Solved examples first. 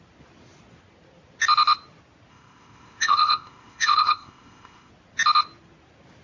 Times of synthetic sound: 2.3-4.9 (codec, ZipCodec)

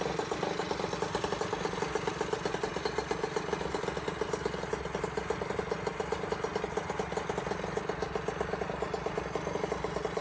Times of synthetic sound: none

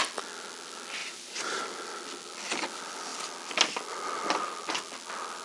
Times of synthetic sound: 1.0-1.6 (vocoder, BigVGAN v2)

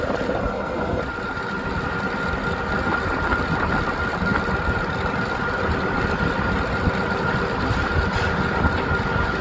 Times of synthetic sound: 0.4-1.0 (codec, SNAC)

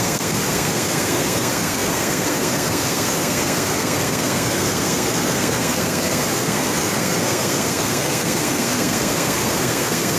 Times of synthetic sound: 0.0-10.2 (codec, SNAC)